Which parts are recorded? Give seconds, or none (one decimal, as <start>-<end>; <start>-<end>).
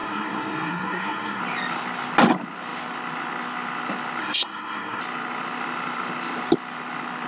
1.4-4.2; 5.0-7.3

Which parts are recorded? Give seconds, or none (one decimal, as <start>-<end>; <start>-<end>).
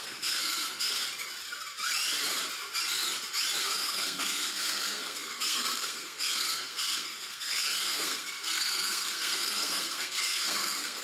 1.0-3.6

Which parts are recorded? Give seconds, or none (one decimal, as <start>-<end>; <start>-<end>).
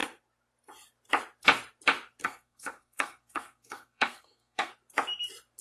0.0-2.2; 4.7-5.6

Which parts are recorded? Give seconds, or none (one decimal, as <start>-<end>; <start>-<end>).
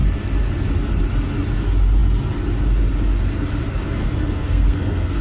0.0-4.0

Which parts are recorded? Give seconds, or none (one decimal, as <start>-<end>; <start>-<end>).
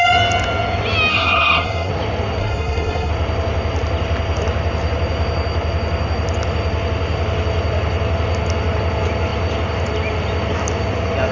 0.0-1.1; 1.9-2.4; 3.1-11.3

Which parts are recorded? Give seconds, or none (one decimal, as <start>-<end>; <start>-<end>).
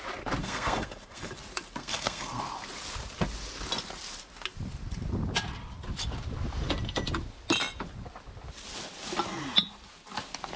0.0-0.4; 1.3-1.8; 2.4-10.6